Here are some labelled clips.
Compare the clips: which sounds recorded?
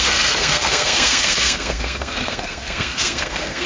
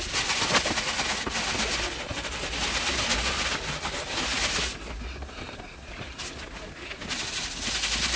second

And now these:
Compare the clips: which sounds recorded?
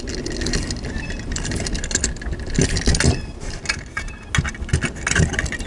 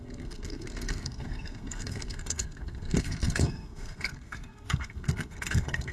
first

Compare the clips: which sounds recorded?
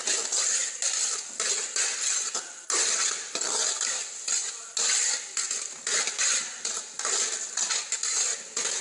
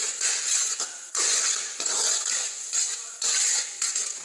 first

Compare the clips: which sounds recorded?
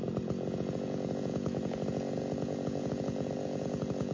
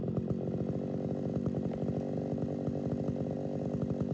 second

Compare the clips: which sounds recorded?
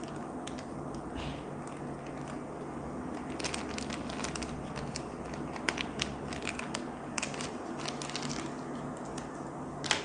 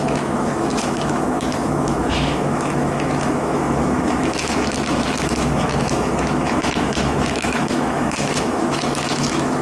first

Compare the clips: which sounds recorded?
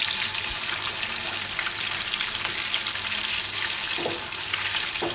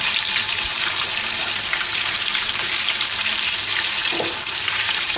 first